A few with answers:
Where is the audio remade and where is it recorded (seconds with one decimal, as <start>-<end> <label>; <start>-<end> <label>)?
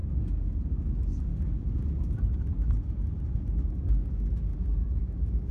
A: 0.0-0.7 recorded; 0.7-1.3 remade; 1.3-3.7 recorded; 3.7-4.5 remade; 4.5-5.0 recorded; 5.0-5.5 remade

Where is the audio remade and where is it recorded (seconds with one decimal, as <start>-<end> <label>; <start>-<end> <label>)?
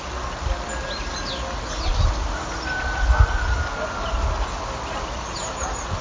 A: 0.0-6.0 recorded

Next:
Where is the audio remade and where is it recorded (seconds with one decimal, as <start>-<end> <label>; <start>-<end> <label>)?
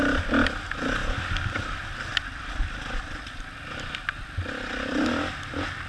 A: 0.0-2.1 recorded; 2.1-3.2 remade; 3.2-5.9 recorded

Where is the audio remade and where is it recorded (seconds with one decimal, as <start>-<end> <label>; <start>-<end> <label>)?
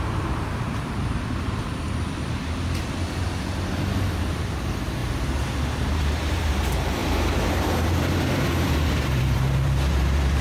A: 0.0-1.0 remade; 1.0-4.6 recorded; 4.6-5.0 remade; 5.0-5.9 recorded; 5.9-10.4 remade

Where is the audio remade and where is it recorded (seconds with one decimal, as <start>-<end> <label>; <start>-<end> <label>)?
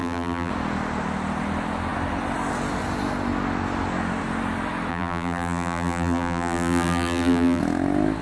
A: 0.0-0.5 remade; 0.5-4.9 recorded; 4.9-7.6 remade; 7.6-8.2 recorded